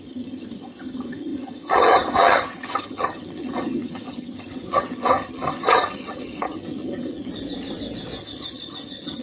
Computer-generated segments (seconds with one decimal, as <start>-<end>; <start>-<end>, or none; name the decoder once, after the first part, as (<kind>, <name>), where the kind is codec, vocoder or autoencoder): 0.0-7.3 (vocoder, HiFi-GAN); 8.2-9.2